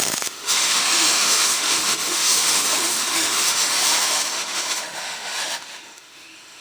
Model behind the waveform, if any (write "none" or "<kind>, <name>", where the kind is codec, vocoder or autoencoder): autoencoder, DAC-VAE